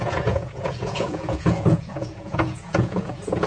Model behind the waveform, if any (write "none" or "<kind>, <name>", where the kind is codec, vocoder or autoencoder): vocoder, Vocos